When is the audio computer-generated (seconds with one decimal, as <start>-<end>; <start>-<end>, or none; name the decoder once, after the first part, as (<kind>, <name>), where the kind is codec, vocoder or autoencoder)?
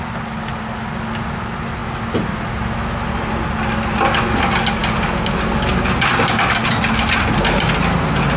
none